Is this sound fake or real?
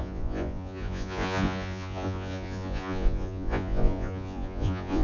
fake